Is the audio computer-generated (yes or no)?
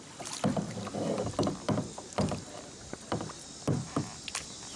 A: no